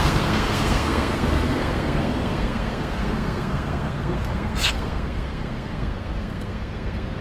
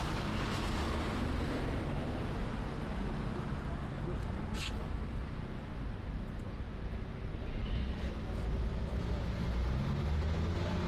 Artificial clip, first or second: first